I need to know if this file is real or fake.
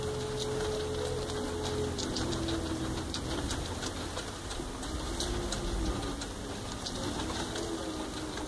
real